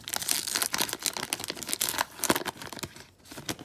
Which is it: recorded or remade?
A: recorded